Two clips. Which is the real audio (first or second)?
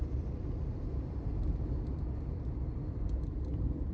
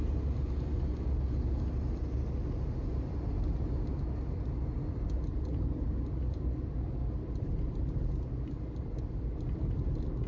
second